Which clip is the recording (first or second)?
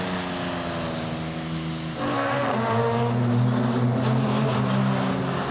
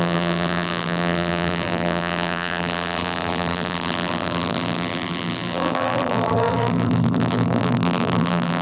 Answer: first